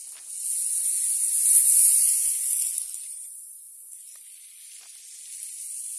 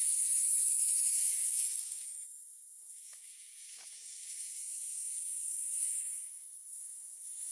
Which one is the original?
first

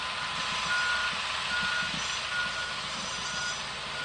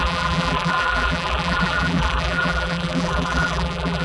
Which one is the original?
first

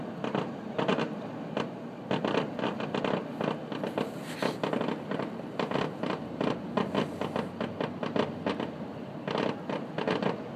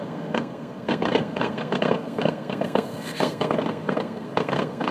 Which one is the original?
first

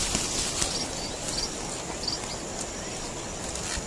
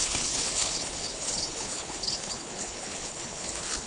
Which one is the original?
first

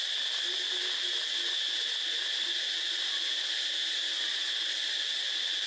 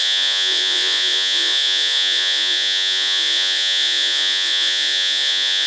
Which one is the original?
first